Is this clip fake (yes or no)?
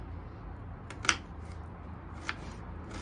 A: no